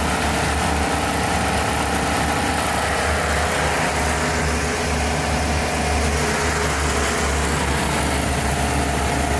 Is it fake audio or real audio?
real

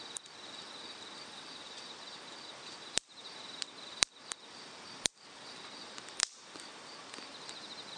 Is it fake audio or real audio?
real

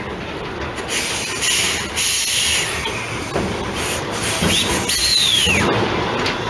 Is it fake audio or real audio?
real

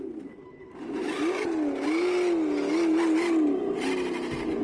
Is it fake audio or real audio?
real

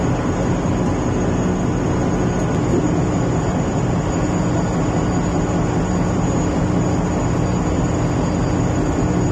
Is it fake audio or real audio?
real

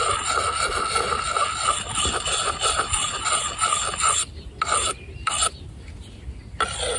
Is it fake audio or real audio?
real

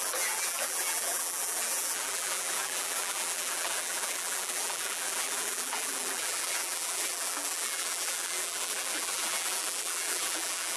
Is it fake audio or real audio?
fake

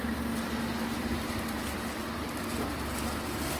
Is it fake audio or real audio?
fake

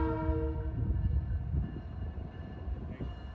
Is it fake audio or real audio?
real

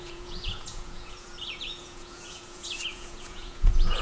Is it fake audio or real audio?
fake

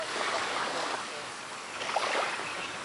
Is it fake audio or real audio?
fake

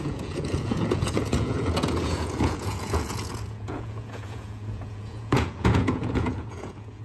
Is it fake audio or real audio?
fake